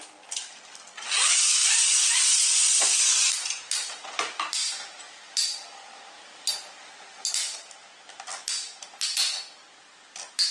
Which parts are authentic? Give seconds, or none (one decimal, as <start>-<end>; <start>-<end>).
0.0-1.6; 3.0-10.5